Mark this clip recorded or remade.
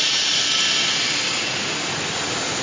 recorded